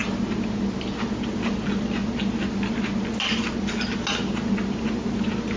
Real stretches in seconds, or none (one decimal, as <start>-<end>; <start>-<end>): 0.0-5.6

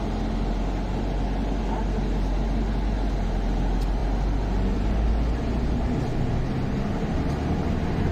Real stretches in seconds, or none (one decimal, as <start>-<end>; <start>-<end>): 0.0-8.1

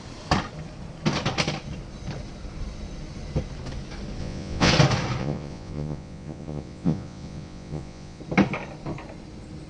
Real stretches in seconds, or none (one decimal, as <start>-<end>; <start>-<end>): 0.0-4.2; 4.7-5.2; 8.2-9.7

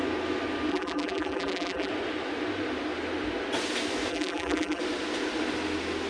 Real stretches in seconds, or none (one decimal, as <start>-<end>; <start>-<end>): 0.0-0.7; 1.9-4.1; 4.8-6.1

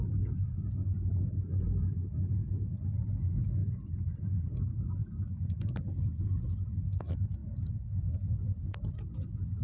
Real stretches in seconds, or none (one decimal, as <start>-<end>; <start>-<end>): 0.0-3.6; 4.2-7.4; 8.6-9.6

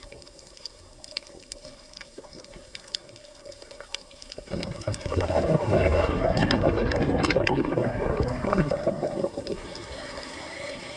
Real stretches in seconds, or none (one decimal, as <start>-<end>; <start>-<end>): none

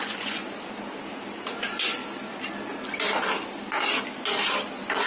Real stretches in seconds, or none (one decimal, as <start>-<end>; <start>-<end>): 0.4-1.3; 2.0-5.1